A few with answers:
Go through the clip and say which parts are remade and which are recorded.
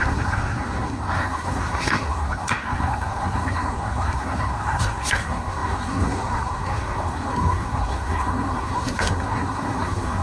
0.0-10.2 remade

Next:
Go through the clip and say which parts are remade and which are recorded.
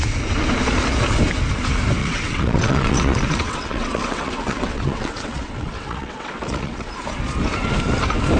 0.0-2.0 recorded; 2.0-6.9 remade; 6.9-8.4 recorded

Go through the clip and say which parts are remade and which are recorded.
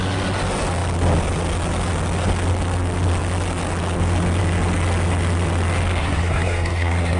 0.0-6.0 recorded; 6.0-7.2 remade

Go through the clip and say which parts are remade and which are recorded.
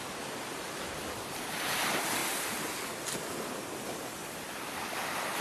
0.0-0.5 recorded; 0.5-1.6 remade; 1.6-4.2 recorded; 4.2-5.4 remade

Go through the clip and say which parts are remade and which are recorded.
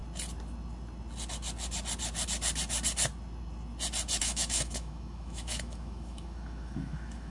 0.0-4.2 recorded; 4.2-7.3 remade